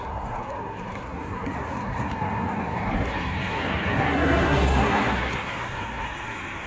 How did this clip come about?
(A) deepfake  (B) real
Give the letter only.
A